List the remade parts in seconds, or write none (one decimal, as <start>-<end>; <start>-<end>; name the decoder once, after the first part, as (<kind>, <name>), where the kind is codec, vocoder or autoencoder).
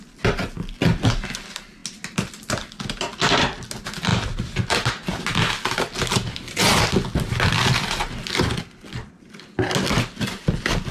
none